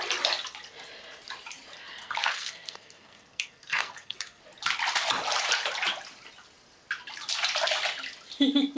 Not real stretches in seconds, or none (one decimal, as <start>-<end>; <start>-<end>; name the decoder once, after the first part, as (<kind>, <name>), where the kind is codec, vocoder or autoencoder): 2.0-4.4 (codec, SNAC)